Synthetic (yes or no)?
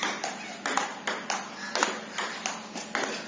no